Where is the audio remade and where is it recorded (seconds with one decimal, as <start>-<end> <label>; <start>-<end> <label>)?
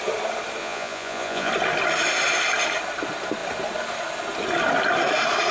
0.0-0.6 recorded; 0.6-1.5 remade; 1.5-5.5 recorded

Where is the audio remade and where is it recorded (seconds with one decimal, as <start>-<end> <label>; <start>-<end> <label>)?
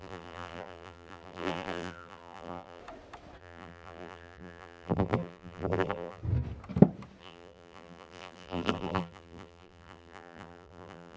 0.0-2.8 remade; 2.8-3.4 recorded; 3.4-6.2 remade; 6.2-7.2 recorded; 7.2-11.2 remade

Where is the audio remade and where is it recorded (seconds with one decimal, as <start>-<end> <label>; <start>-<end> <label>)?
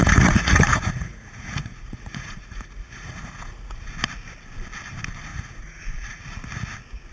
0.0-3.9 remade; 3.9-5.3 recorded; 5.3-6.2 remade; 6.2-7.1 recorded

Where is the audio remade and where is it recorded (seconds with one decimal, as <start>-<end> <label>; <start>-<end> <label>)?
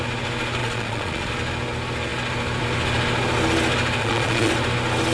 0.0-0.6 recorded; 0.6-1.3 remade; 1.3-4.0 recorded; 4.0-4.5 remade; 4.5-5.1 recorded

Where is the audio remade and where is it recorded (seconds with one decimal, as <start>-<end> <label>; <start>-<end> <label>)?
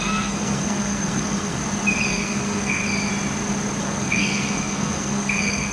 0.0-1.6 remade; 1.6-2.1 recorded; 2.1-2.8 remade; 2.8-3.8 recorded; 3.8-5.7 remade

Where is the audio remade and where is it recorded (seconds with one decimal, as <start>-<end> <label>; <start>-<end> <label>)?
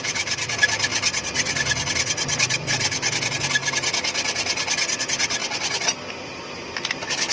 0.0-7.3 recorded